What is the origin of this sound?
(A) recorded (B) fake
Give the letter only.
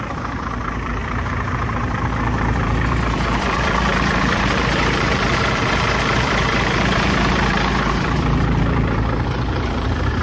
B